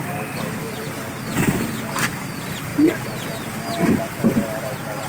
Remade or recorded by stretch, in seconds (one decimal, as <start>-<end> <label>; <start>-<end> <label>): 0.0-2.7 remade; 2.7-3.6 recorded; 3.6-5.1 remade